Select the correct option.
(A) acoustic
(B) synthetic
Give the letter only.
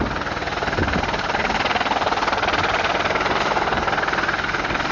A